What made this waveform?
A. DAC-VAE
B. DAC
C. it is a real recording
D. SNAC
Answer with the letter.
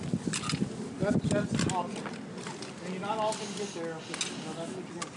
C